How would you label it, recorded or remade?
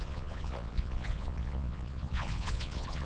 remade